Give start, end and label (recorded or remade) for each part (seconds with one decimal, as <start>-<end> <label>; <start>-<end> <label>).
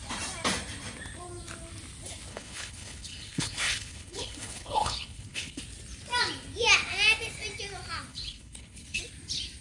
0.0-2.3 recorded; 2.3-5.6 remade; 5.6-8.1 recorded; 8.1-9.0 remade; 9.0-9.6 recorded